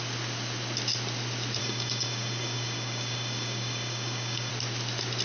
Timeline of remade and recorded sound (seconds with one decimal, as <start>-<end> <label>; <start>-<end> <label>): 0.0-1.6 recorded; 1.6-4.5 remade; 4.5-5.2 recorded